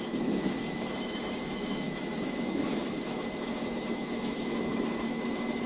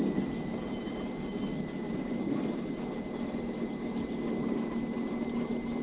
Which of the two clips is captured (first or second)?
second